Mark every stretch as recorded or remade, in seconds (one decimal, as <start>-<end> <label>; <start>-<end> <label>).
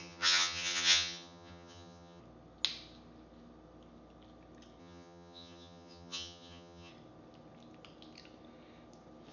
0.0-2.2 remade; 2.2-4.8 recorded; 4.8-6.9 remade; 6.9-9.3 recorded